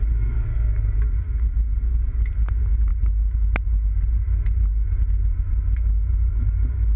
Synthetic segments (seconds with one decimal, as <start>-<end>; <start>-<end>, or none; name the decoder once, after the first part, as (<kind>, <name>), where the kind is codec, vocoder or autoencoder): none